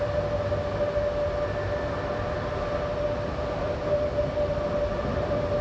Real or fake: real